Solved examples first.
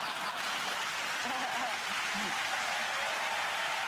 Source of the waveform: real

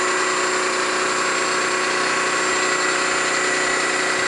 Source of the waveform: real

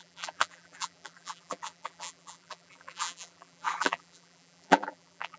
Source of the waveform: fake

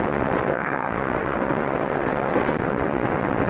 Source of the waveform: fake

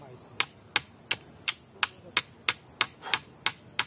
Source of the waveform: real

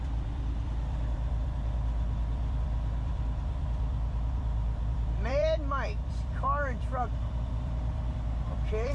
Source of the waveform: fake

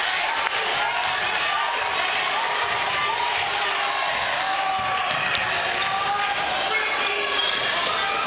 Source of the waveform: real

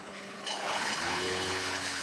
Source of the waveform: fake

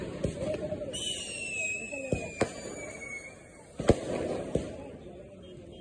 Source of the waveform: real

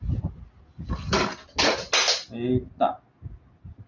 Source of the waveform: real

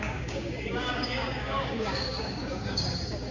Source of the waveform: fake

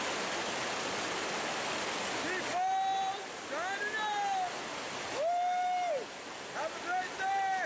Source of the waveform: real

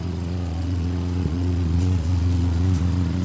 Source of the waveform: fake